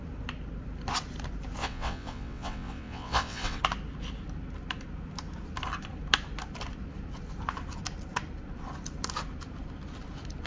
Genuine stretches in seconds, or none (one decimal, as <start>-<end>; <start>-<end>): 0.0-1.6; 3.6-10.5